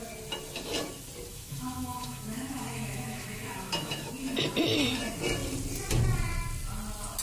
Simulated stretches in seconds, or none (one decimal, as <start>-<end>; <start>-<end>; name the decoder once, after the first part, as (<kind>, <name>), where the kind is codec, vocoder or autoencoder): 1.3-4.1 (autoencoder, DAC-VAE)